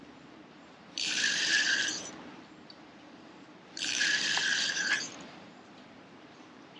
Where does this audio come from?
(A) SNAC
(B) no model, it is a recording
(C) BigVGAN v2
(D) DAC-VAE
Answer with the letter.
C